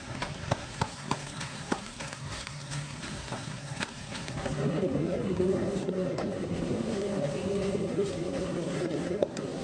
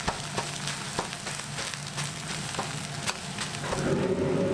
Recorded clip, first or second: second